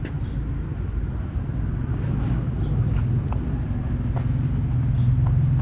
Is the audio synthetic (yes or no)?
no